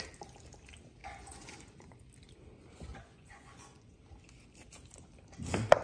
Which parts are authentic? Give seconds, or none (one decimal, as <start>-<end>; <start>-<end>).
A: 0.0-1.0; 2.1-2.9; 4.0-5.8